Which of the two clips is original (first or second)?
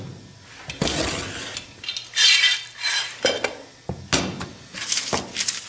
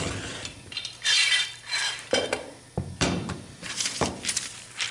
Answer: first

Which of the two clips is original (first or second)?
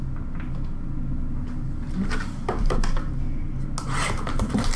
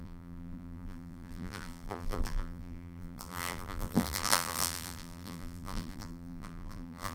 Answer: first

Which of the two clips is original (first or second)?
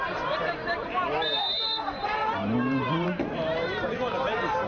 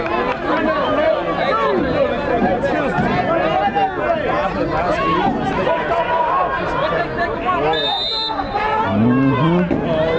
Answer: second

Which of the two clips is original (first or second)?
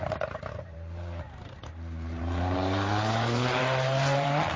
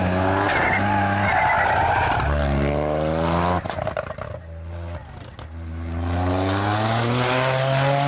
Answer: second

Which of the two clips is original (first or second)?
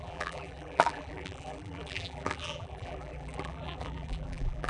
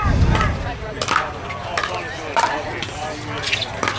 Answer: second